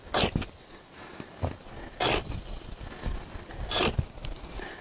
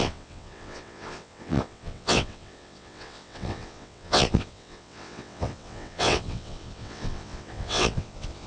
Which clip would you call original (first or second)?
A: first